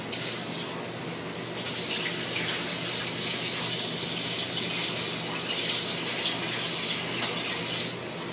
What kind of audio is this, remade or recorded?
recorded